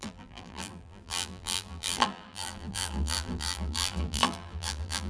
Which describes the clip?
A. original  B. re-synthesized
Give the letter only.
B